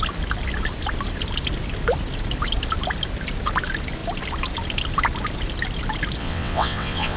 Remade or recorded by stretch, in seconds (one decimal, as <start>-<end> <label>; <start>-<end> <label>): 0.0-6.2 recorded; 6.2-7.2 remade

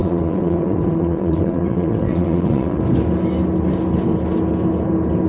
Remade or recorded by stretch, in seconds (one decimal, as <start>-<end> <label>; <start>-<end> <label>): 0.0-2.8 remade; 2.8-5.3 recorded